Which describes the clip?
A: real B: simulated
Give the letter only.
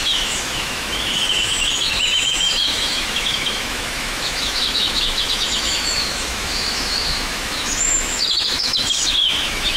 B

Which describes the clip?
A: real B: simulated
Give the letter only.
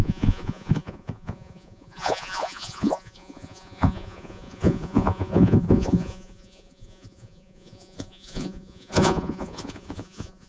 B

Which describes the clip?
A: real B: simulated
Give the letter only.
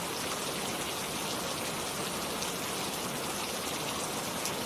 A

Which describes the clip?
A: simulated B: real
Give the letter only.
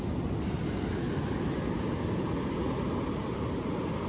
B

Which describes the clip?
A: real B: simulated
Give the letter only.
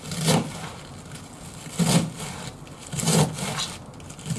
A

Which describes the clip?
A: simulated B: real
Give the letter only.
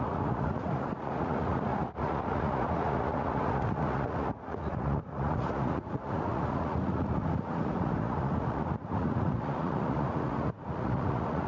A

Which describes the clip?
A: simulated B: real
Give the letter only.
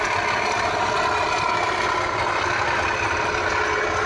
B